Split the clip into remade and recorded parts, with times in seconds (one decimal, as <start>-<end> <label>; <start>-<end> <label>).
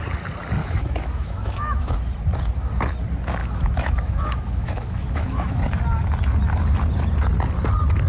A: 0.0-0.6 recorded; 0.6-1.9 remade; 1.9-3.4 recorded; 3.4-5.6 remade; 5.6-8.1 recorded